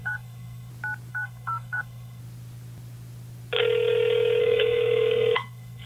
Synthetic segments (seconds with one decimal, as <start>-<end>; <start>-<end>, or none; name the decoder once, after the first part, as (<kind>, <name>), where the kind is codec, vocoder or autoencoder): 0.0-0.7 (codec, SNAC); 1.1-2.2; 4.4-5.9